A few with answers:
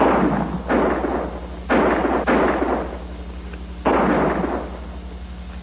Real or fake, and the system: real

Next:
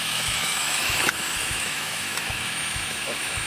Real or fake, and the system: fake, autoencoder, DAC-VAE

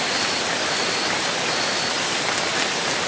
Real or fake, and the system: real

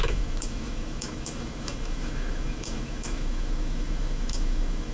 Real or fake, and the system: fake, autoencoder, DAC-VAE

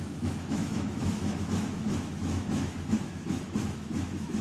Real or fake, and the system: fake, autoencoder, DAC-VAE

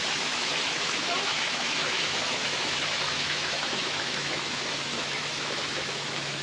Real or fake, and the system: fake, autoencoder, DAC-VAE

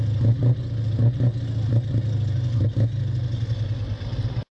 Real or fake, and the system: real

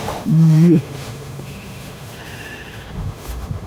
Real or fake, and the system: fake, autoencoder, DAC-VAE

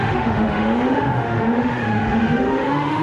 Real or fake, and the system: fake, autoencoder, DAC-VAE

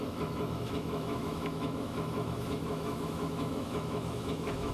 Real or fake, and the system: fake, autoencoder, DAC-VAE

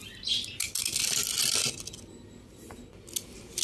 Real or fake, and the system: real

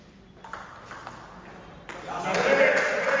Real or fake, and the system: real